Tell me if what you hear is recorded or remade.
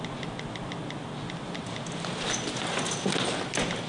recorded